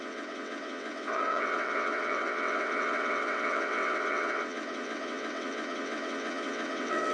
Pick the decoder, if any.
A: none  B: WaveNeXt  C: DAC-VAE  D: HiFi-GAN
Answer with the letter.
B